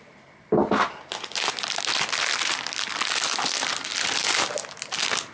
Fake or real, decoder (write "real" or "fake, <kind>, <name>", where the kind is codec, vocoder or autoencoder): real